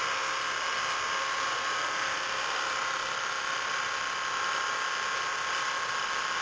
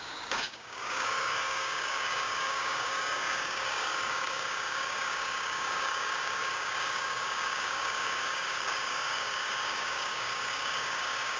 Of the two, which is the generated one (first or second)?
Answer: second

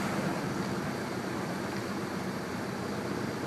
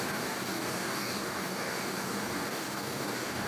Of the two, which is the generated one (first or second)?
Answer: second